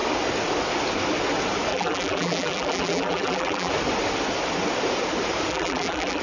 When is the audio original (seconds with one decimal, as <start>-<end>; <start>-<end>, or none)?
0.0-1.7; 3.7-5.5